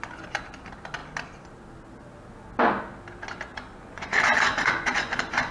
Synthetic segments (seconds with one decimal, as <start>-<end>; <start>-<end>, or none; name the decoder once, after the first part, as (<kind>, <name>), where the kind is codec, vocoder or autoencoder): 3.5-5.5 (vocoder, Vocos)